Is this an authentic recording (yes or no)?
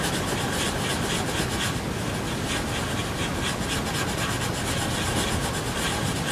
yes